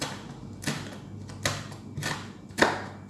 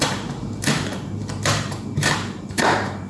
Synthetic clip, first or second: second